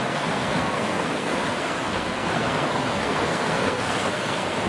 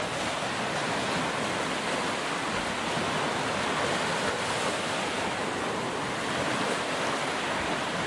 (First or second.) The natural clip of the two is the second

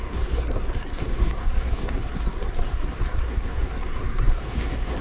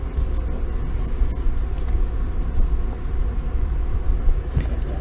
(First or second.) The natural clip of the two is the second